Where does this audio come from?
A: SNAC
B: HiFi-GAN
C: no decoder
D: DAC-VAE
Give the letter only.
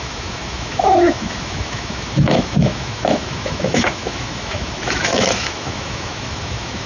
D